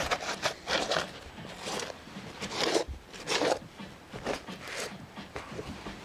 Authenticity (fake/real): fake